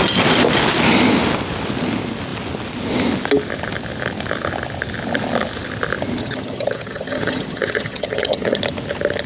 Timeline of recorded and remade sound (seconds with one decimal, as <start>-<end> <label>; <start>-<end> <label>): 0.0-6.2 recorded; 6.2-8.6 remade; 8.6-9.3 recorded